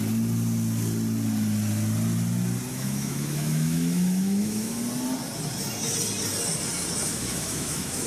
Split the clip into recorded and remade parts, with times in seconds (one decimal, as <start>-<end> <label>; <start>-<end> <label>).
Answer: 0.0-2.7 recorded; 2.7-4.8 remade; 4.8-7.1 recorded; 7.1-8.1 remade